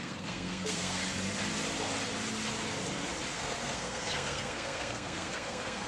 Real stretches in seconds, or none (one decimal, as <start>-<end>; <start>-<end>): 1.0-3.3